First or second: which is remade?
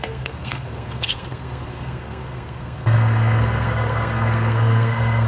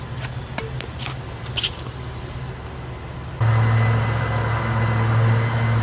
first